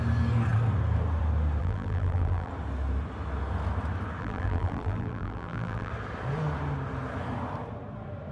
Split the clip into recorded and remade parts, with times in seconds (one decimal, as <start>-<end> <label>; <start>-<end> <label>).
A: 0.0-1.6 recorded; 1.6-2.5 remade; 2.5-4.2 recorded; 4.2-5.9 remade; 5.9-8.3 recorded

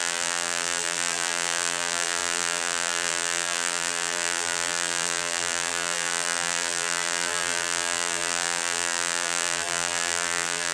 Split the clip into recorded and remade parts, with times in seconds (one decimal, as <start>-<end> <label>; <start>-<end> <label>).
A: 0.0-10.7 remade